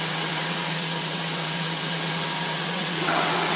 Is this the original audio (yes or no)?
no